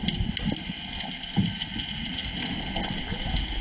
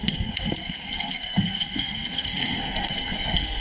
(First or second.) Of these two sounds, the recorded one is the first